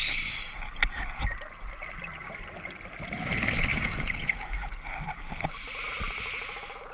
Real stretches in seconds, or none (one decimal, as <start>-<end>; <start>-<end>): 0.0-3.7; 4.5-6.9